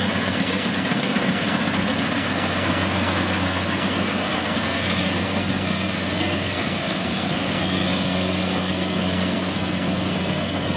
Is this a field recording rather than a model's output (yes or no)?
no